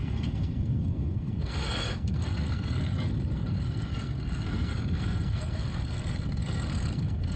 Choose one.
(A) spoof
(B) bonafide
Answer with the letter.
A